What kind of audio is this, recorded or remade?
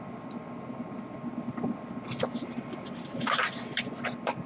recorded